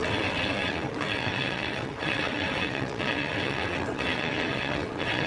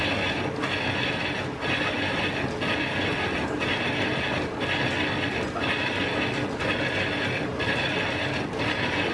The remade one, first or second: first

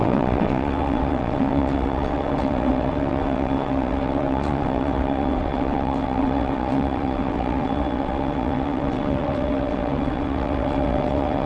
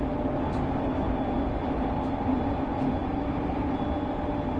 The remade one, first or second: first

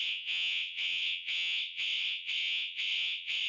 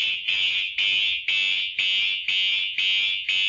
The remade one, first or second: first